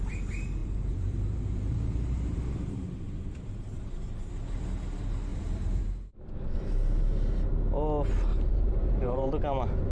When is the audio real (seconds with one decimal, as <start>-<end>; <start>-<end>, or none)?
0.0-0.6; 2.4-5.3; 5.9-8.3; 9.3-9.9